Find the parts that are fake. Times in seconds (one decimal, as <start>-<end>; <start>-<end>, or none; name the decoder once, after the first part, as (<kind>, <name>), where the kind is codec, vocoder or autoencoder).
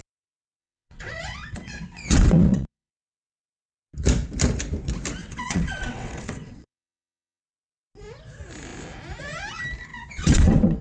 0.6-2.9 (vocoder, WaveNeXt); 5.2-7.4; 9.9-10.8